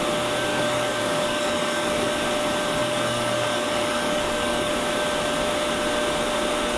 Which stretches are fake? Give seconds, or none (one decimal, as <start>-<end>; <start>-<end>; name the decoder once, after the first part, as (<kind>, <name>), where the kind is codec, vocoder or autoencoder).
0.5-2.1 (codec, DAC); 2.8-4.7

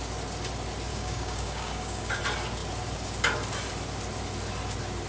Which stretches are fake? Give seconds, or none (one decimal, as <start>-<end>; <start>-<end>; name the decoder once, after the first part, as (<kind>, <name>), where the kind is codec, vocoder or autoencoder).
0.9-2.2 (codec, DAC)

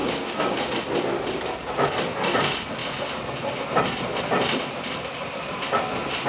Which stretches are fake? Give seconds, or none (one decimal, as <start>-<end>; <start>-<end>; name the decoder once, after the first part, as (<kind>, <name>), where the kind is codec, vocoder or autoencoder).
0.0-0.6 (codec, DAC)

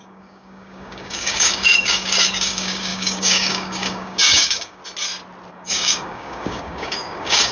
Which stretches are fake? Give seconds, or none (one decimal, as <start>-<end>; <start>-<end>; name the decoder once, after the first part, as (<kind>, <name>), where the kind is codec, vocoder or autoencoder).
0.0-4.8 (codec, DAC); 5.5-7.5

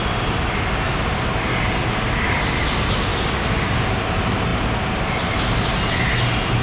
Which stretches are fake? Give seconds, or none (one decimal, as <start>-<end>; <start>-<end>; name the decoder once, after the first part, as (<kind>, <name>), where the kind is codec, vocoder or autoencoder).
1.5-2.4 (codec, DAC); 3.1-4.0

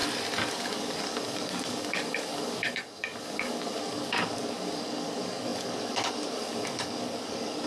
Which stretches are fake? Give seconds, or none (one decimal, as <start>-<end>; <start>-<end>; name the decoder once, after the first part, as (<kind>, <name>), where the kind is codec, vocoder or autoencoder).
0.5-7.7 (codec, DAC)